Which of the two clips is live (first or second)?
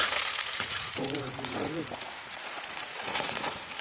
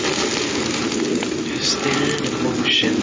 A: second